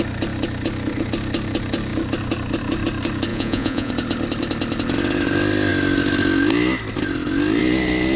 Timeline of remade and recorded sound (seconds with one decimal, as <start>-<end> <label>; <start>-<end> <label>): 0.0-3.3 recorded; 3.3-3.9 remade; 3.9-8.2 recorded